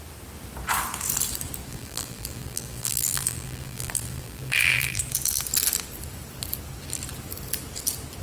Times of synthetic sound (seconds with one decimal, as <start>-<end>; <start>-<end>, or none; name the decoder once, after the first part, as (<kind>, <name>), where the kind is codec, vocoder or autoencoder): 1.7-5.0 (vocoder, BigVGAN v2)